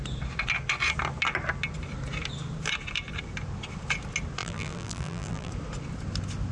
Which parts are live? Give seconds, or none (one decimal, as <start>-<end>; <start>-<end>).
0.0-4.4; 5.5-6.5